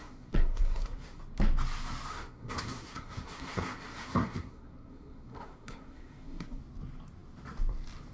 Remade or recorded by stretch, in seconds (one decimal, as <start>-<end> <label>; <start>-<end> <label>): 0.0-1.2 remade; 1.2-2.1 recorded; 2.1-6.6 remade; 6.6-8.1 recorded